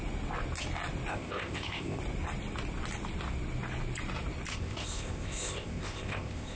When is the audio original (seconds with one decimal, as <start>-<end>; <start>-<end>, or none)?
0.0-1.1; 2.0-4.5